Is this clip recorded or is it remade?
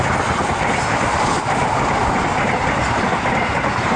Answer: recorded